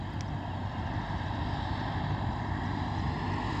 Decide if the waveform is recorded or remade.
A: recorded